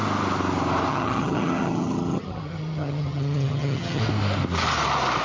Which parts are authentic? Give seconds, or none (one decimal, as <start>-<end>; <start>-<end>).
0.0-0.9; 4.0-5.2